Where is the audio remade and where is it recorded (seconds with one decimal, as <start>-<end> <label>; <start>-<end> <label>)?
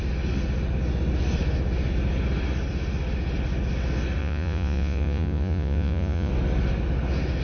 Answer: 0.0-4.2 recorded; 4.2-6.3 remade; 6.3-7.4 recorded